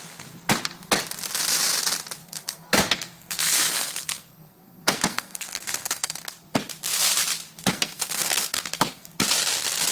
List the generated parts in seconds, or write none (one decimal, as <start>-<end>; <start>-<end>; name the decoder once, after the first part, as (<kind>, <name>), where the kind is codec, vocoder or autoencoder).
2.2-6.2 (codec, SNAC); 7.7-9.1